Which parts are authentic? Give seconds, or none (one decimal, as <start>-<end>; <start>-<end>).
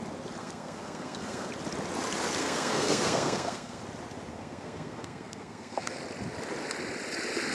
0.0-0.4; 1.5-2.4; 3.8-4.3; 6.0-7.5